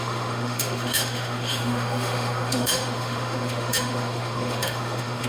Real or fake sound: fake